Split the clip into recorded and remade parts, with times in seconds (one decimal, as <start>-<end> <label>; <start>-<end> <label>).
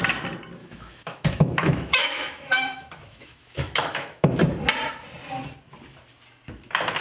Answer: 0.0-0.6 recorded; 0.6-4.3 remade; 4.3-7.0 recorded